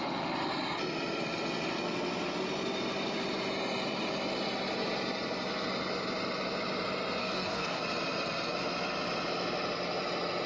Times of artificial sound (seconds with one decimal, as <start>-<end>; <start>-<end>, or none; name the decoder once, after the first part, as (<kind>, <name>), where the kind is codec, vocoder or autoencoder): 7.2-7.8 (codec, DAC)

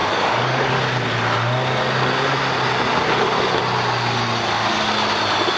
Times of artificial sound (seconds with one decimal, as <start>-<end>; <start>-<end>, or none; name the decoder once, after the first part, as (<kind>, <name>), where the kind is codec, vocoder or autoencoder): 0.0-0.7 (codec, DAC)